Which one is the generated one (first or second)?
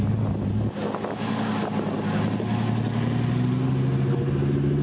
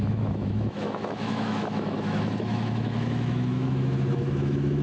second